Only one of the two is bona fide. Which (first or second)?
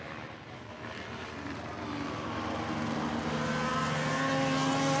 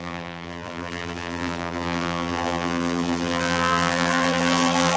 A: first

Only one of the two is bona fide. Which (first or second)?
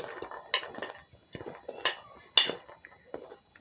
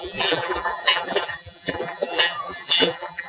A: first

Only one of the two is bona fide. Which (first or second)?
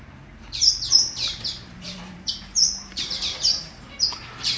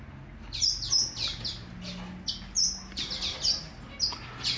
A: second